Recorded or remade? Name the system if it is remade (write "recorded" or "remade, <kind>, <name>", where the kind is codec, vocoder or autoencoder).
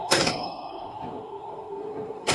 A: remade, codec, SNAC